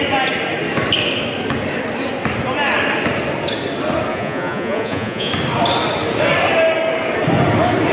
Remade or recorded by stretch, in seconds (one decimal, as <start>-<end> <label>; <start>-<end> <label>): 0.0-4.1 recorded; 4.1-5.3 remade; 5.3-7.9 recorded